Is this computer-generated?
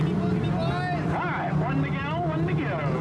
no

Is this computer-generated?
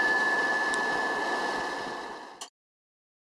no